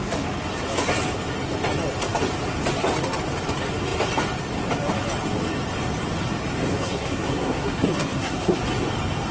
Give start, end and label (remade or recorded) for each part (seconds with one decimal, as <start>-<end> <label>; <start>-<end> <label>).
0.0-6.8 recorded; 6.8-8.6 remade; 8.6-9.3 recorded